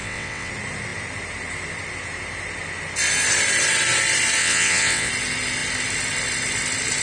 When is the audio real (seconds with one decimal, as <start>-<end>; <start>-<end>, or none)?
0.5-4.4; 5.1-7.0